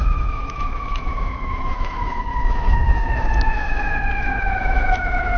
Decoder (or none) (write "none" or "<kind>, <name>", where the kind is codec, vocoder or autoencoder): autoencoder, DAC-VAE